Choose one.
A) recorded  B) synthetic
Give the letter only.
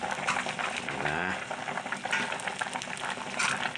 A